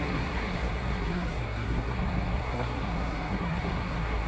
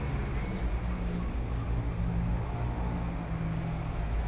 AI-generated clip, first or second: first